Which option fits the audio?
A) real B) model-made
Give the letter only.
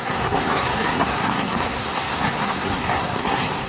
B